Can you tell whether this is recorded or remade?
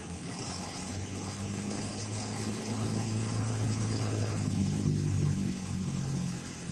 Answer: remade